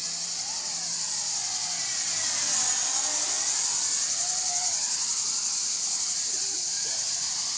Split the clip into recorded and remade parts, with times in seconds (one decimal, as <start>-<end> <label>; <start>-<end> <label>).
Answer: 0.0-7.6 recorded